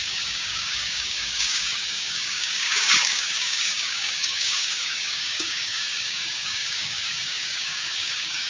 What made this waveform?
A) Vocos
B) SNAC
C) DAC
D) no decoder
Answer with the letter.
C